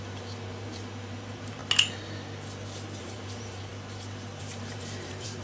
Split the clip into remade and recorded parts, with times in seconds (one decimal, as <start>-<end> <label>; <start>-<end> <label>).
0.0-1.6 remade; 1.6-3.0 recorded; 3.0-3.7 remade; 3.7-4.4 recorded; 4.4-5.4 remade